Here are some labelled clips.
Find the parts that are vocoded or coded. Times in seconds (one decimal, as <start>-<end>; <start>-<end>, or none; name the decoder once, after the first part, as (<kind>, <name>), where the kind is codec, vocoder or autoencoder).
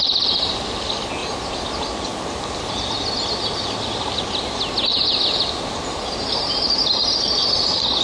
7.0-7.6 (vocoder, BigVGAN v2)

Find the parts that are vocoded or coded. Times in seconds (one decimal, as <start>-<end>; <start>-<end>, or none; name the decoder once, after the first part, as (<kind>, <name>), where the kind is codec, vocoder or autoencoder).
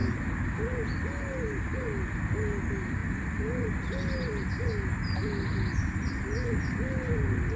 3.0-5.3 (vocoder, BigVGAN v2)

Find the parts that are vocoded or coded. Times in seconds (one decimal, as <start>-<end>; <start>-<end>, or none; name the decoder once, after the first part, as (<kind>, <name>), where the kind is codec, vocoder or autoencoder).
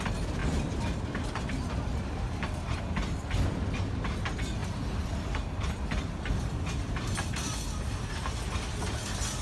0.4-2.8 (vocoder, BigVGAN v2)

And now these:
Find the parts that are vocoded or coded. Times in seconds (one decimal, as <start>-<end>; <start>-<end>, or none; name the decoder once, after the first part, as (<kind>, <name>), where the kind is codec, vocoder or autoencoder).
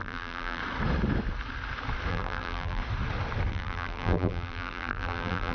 0.0-0.6 (vocoder, BigVGAN v2); 2.1-2.8; 3.5-5.5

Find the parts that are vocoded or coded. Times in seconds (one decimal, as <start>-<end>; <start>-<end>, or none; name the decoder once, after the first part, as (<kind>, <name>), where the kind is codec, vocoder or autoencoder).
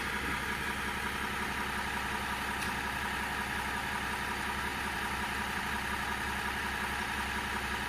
4.7-5.6 (vocoder, BigVGAN v2)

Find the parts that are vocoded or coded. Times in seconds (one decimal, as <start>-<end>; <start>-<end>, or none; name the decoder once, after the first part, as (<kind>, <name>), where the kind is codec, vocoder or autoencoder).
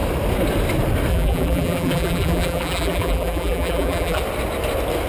1.1-4.2 (vocoder, BigVGAN v2)